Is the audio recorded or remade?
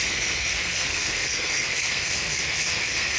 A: remade